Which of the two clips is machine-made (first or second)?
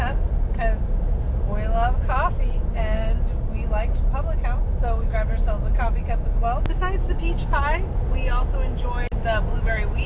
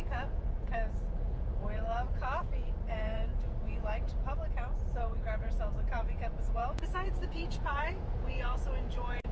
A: second